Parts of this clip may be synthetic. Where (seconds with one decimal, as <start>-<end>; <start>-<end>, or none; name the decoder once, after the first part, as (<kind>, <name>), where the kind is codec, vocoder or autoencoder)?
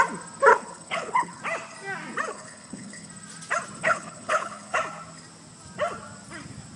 0.5-1.4 (codec, HILCodec); 2.3-3.1; 3.8-4.8